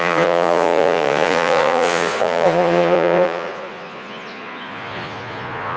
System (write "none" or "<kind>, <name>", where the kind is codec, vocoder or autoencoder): vocoder, Vocos